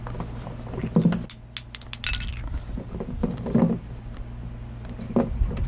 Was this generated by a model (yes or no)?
no